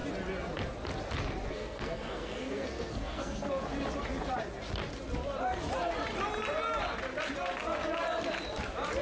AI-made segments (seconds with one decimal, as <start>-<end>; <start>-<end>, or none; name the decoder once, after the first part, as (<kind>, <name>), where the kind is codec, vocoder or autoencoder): 1.5-3.6 (codec, SNAC)